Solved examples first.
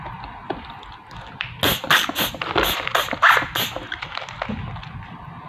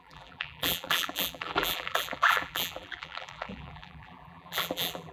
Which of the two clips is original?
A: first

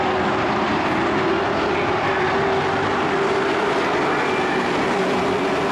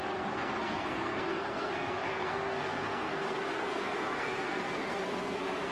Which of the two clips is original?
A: first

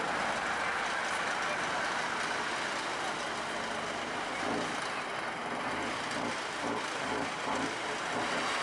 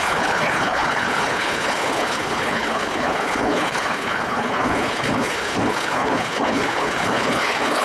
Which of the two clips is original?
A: first